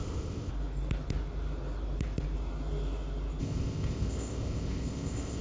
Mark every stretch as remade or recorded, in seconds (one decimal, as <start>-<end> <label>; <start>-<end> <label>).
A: 0.0-0.5 remade; 0.5-3.4 recorded; 3.4-5.4 remade